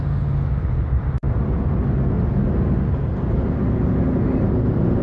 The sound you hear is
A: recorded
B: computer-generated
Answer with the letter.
A